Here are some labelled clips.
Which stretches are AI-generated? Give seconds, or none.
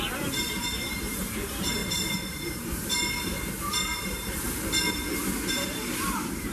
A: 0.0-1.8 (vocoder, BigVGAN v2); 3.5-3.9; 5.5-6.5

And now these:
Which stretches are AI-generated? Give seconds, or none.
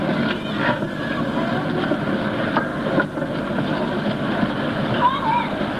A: none